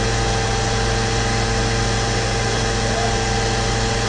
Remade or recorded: recorded